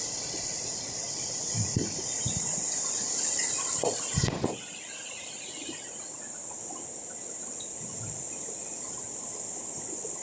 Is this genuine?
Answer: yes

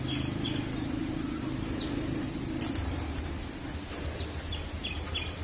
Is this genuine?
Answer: no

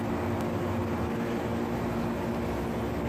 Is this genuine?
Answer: yes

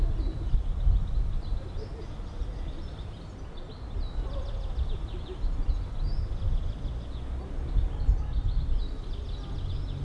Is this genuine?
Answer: yes